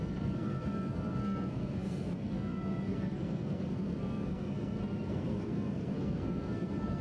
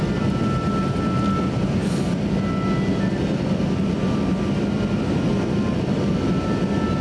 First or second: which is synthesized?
first